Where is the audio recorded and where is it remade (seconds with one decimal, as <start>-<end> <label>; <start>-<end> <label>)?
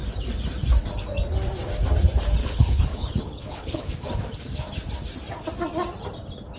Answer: 0.0-2.4 recorded; 2.4-3.9 remade; 3.9-6.6 recorded